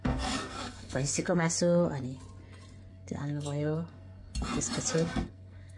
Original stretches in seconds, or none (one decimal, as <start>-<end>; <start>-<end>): 1.5-2.9; 4.3-4.9